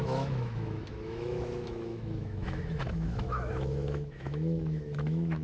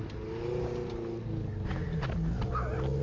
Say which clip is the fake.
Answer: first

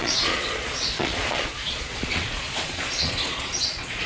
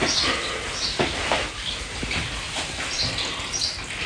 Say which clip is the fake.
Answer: first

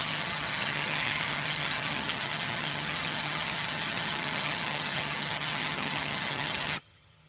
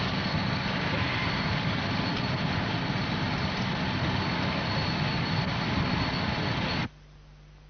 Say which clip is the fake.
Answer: first